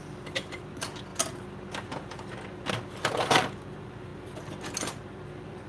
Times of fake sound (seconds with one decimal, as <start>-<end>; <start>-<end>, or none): none